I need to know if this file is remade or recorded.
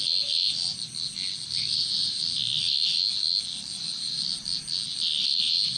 recorded